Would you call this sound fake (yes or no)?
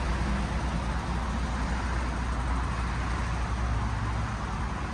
no